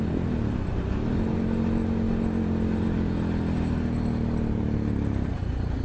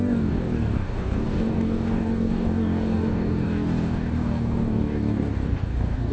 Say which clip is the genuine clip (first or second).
first